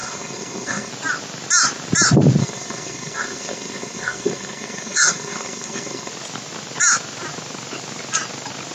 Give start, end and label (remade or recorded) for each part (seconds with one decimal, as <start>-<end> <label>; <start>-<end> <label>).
0.0-0.9 remade; 0.9-2.4 recorded; 2.4-6.1 remade; 6.1-8.7 recorded

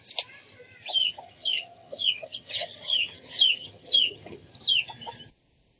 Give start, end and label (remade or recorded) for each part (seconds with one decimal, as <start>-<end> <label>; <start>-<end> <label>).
0.0-1.0 recorded; 1.0-4.5 remade; 4.5-5.8 recorded

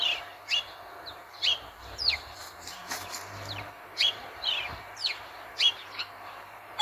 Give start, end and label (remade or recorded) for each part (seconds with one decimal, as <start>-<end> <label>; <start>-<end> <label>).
0.0-6.8 remade

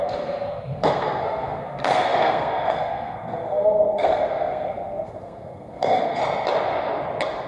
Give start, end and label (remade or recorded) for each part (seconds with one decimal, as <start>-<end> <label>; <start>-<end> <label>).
0.0-6.2 remade; 6.2-7.5 recorded

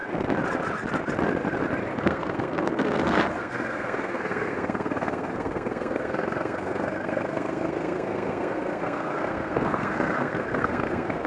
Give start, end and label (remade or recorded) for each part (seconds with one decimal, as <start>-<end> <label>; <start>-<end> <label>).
0.0-2.0 recorded; 2.0-11.3 remade